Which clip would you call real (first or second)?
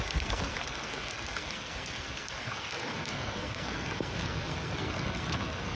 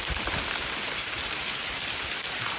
second